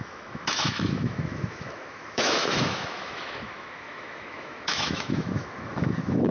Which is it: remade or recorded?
remade